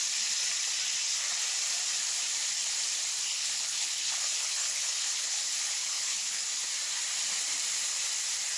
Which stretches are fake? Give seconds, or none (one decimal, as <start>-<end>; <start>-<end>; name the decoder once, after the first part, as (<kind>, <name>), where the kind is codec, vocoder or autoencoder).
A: 3.3-6.4 (codec, HILCodec)